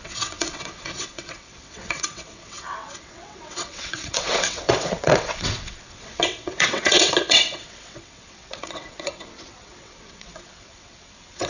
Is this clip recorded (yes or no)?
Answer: no